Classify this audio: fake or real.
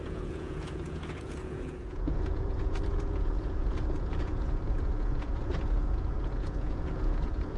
fake